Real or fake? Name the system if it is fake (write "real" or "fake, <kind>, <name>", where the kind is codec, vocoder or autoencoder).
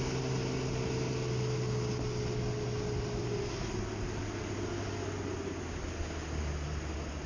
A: real